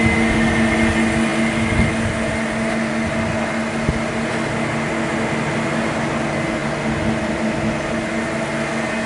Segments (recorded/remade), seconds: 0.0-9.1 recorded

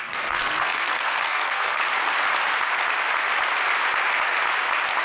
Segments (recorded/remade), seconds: 0.0-1.8 remade; 1.8-5.0 recorded

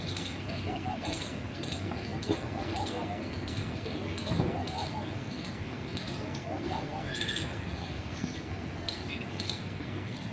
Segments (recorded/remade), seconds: 0.0-10.3 remade

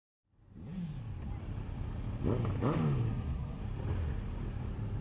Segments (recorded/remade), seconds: 0.0-3.1 recorded; 3.1-3.6 remade; 3.6-5.0 recorded

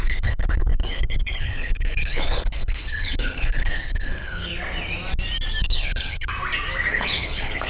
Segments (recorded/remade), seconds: 0.0-4.5 remade; 4.5-5.6 recorded; 5.6-6.3 remade; 6.3-6.9 recorded; 6.9-7.7 remade

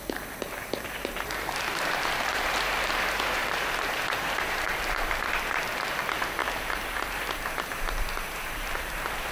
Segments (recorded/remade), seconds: 0.0-9.3 remade

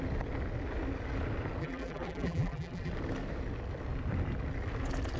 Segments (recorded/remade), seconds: 0.0-1.6 recorded; 1.6-2.9 remade; 2.9-5.2 recorded

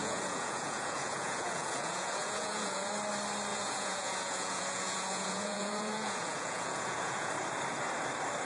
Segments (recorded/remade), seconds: 0.0-2.9 remade; 2.9-3.5 recorded; 3.5-7.3 remade; 7.3-8.5 recorded